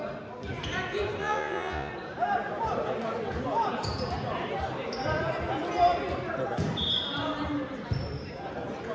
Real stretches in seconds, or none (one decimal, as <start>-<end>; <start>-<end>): 0.0-1.2; 1.9-8.9